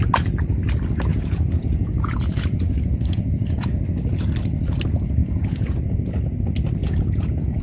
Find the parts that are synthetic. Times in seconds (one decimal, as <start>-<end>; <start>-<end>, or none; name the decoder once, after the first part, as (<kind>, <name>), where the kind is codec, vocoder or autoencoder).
1.1-3.8 (vocoder, Vocos); 5.2-5.8; 6.8-7.6